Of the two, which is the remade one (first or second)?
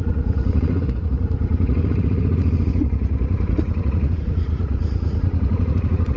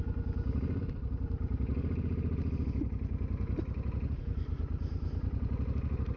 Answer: first